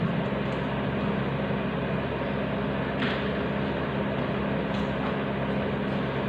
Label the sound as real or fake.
real